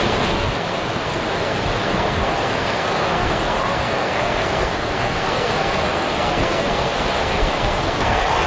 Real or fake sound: fake